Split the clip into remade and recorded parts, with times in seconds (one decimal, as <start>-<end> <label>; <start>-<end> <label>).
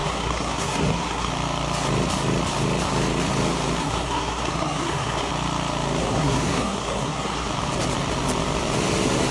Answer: 0.0-1.3 remade; 1.3-3.8 recorded; 3.8-5.3 remade; 5.3-6.0 recorded; 6.0-7.5 remade; 7.5-9.3 recorded